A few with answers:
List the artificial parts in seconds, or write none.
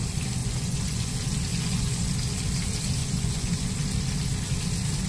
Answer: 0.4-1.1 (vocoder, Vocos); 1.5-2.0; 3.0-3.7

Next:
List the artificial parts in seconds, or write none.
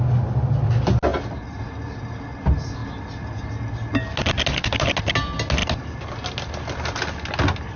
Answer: none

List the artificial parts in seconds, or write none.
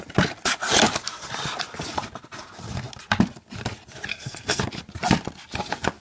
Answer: 4.1-4.6 (codec, SNAC)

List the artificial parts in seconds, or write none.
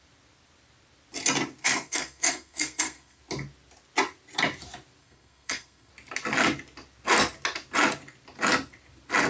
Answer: 1.6-3.2 (codec, SNAC); 5.0-5.9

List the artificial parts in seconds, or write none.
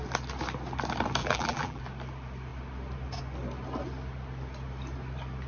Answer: 1.2-1.8 (vocoder, BigVGAN v2)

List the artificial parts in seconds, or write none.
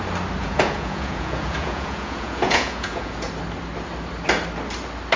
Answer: 0.4-3.3 (vocoder, Vocos)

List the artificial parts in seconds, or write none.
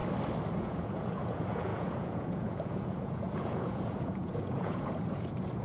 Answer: 0.6-5.6 (vocoder, Vocos)